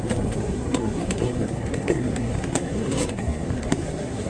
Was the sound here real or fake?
fake